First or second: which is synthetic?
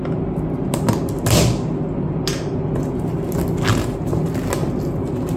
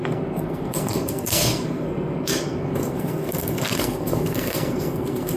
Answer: second